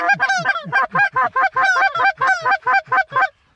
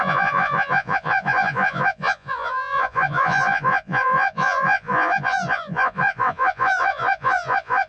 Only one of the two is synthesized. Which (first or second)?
second